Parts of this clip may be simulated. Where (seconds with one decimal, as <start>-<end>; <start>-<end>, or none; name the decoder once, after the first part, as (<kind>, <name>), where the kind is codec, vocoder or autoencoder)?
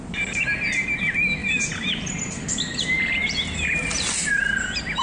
1.4-2.1 (vocoder, BigVGAN v2); 3.2-4.3